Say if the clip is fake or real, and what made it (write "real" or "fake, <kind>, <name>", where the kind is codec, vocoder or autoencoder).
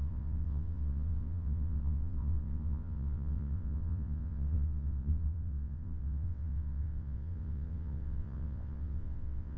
fake, vocoder, WaveNeXt